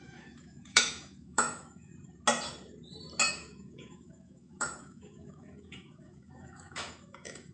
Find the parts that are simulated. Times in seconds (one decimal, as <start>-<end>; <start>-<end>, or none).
0.0-1.9; 3.3-7.5